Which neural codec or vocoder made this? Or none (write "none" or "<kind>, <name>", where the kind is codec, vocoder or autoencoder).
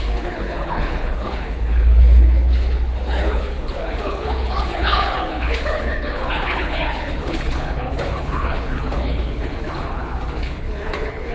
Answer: codec, HILCodec